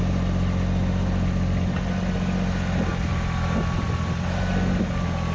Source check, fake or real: real